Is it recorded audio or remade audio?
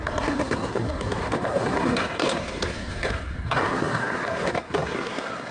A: remade